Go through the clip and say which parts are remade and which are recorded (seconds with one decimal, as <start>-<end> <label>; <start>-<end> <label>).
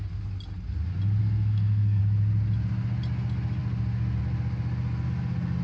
0.0-1.2 recorded; 1.2-2.0 remade; 2.0-5.6 recorded